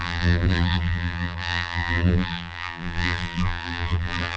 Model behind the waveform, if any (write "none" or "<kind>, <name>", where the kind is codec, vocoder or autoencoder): vocoder, BigVGAN v2